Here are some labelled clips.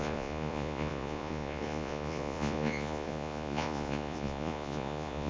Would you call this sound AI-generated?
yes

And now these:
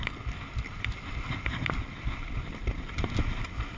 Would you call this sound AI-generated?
no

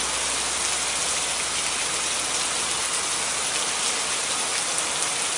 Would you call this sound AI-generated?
no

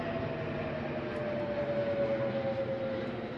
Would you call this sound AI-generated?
no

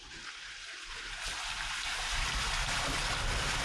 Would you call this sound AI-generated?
no